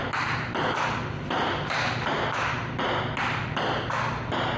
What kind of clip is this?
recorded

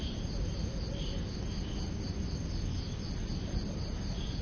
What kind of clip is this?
recorded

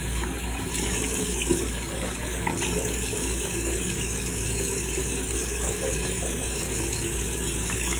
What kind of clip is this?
remade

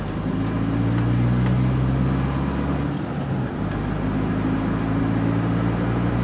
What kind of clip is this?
recorded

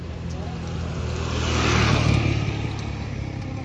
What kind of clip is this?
recorded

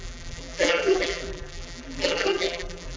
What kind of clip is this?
remade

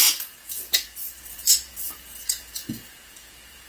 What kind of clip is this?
remade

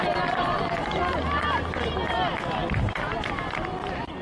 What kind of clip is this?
recorded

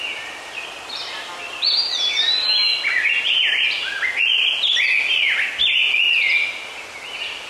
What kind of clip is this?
recorded